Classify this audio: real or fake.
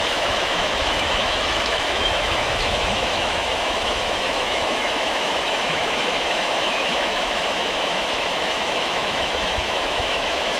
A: fake